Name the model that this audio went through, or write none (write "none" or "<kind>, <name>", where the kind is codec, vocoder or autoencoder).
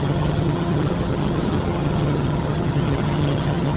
vocoder, HiFi-GAN